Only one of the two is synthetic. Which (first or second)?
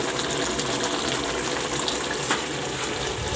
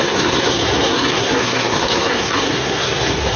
second